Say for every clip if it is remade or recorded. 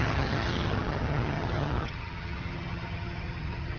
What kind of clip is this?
remade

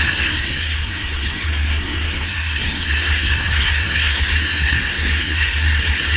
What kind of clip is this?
remade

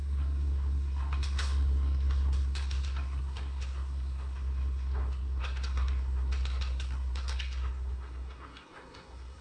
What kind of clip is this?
remade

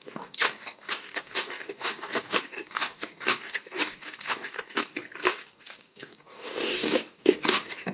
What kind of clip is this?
remade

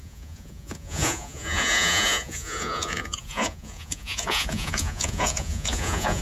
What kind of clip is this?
remade